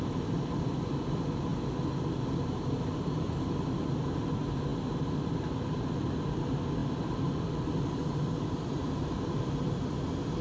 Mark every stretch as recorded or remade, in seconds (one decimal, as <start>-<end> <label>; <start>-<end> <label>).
0.0-10.4 recorded